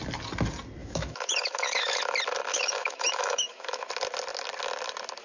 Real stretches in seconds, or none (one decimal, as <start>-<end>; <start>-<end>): 0.0-0.8; 2.0-2.5; 3.9-5.2